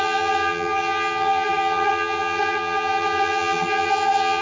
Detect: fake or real fake